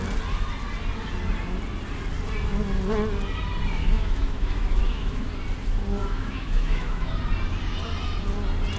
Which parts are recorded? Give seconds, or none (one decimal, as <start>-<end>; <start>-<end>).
0.0-3.8; 5.3-6.0; 7.1-8.8